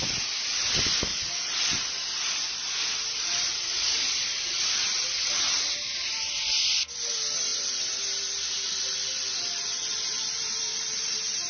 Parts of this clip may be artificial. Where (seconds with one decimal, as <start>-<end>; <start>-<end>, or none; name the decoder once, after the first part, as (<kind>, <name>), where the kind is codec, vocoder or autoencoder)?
0.0-1.1 (vocoder, BigVGAN v2); 2.3-7.5; 8.8-11.5

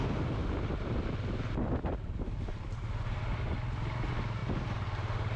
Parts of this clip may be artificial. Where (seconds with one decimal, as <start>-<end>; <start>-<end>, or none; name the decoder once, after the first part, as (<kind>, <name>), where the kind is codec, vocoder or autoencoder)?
none

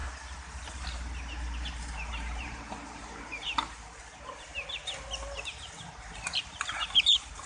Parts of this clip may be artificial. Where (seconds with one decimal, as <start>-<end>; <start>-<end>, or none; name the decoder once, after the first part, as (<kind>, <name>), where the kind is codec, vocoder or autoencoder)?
0.7-4.8 (vocoder, BigVGAN v2); 6.4-7.5

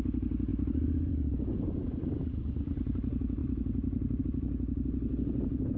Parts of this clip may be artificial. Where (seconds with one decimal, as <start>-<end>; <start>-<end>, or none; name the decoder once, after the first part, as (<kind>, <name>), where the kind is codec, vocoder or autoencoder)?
0.5-1.1 (vocoder, BigVGAN v2); 1.8-2.9

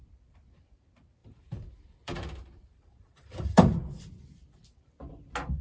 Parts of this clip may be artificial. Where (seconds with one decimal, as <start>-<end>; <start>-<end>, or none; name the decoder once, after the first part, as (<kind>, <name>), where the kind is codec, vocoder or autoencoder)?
1.2-4.0 (vocoder, BigVGAN v2)

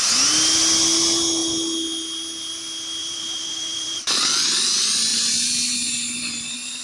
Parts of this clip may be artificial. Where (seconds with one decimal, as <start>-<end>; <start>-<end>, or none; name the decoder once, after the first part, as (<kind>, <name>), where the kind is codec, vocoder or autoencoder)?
3.0-4.2 (vocoder, BigVGAN v2)